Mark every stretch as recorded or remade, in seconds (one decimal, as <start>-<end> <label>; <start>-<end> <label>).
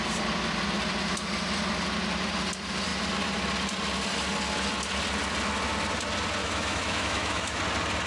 0.0-6.4 recorded; 6.4-7.6 remade; 7.6-8.1 recorded